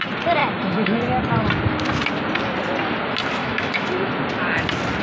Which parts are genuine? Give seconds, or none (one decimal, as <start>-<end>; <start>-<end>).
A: 0.0-0.4; 1.0-3.4; 4.1-5.0